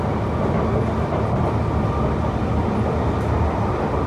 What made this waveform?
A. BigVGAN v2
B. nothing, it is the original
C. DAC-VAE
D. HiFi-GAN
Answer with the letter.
B